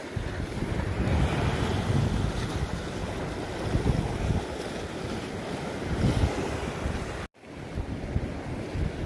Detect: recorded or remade recorded